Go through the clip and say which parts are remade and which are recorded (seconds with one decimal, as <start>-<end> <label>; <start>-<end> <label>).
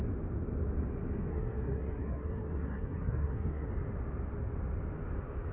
0.0-1.3 recorded; 1.3-3.7 remade; 3.7-5.5 recorded